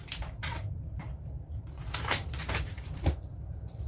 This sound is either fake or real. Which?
fake